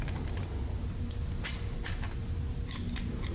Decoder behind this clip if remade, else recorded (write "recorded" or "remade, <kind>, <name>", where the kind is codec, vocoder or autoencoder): recorded